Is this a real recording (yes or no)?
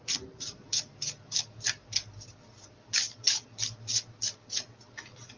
yes